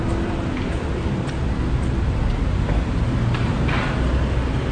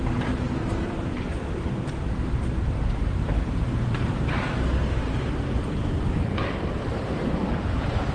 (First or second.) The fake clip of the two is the second